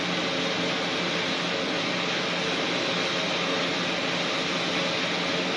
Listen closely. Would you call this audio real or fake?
real